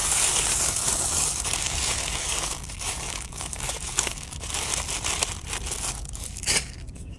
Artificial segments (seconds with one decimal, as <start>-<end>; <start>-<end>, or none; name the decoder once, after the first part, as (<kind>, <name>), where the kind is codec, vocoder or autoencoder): 0.0-4.7 (codec, DAC); 5.9-7.2